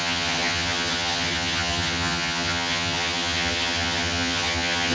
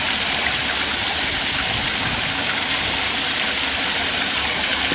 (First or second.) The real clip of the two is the second